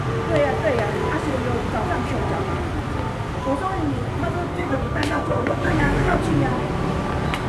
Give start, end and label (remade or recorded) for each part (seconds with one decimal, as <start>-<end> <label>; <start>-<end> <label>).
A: 0.0-4.5 recorded; 4.5-6.2 remade; 6.2-7.5 recorded